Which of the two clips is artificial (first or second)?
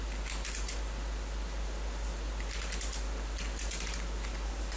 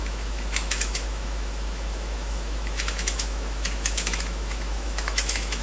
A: second